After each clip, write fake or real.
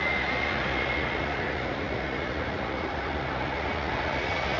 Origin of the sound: fake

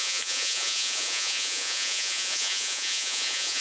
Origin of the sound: fake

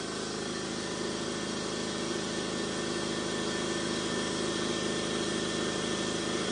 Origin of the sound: real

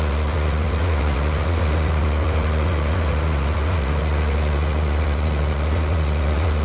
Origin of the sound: fake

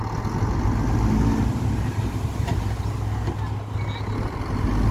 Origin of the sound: real